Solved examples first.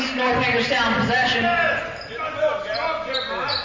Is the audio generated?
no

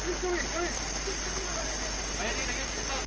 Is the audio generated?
no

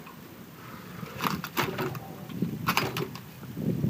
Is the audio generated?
no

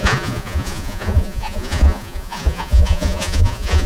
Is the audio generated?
yes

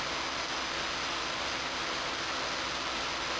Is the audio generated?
no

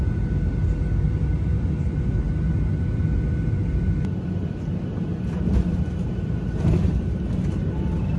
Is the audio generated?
no